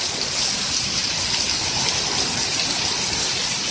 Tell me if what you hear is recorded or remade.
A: recorded